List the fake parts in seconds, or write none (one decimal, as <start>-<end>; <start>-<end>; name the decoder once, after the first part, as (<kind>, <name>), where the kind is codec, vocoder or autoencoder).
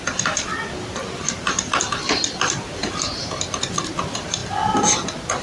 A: 0.0-0.5 (vocoder, BigVGAN v2); 1.2-4.4